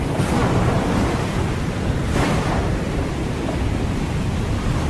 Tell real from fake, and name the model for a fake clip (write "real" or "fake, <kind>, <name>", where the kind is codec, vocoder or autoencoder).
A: real